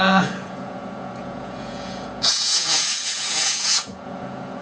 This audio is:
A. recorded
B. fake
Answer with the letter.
B